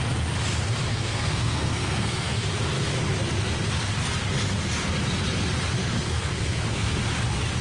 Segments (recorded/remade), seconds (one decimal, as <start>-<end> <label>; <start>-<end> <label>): 0.0-0.9 recorded; 0.9-2.4 remade; 2.4-5.8 recorded; 5.8-7.0 remade; 7.0-7.6 recorded